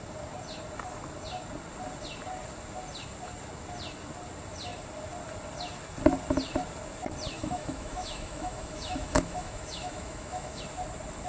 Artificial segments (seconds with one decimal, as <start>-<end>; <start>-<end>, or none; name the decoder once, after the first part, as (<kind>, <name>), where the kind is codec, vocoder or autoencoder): 7.4-10.6 (autoencoder, DAC-VAE)